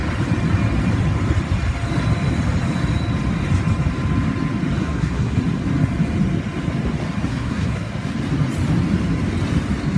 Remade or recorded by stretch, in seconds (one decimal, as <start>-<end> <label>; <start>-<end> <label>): 0.0-4.8 recorded; 4.8-5.4 remade; 5.4-7.3 recorded; 7.3-7.9 remade; 7.9-10.0 recorded